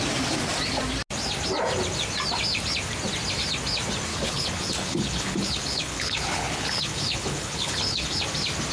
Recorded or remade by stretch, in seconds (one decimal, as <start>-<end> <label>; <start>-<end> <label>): 0.0-4.1 recorded; 4.1-8.2 remade; 8.2-8.7 recorded